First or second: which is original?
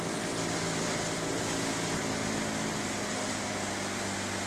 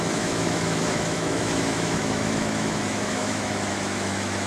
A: first